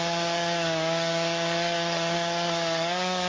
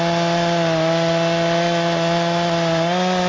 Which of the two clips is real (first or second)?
second